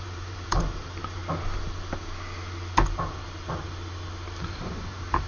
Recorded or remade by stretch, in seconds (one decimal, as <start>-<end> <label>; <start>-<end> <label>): 0.0-1.2 remade; 1.2-4.4 recorded; 4.4-5.3 remade